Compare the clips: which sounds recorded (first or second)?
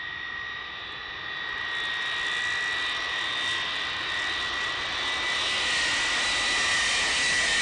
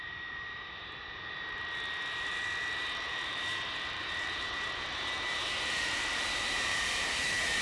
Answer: first